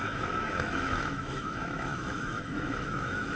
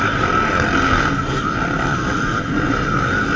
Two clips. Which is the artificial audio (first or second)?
first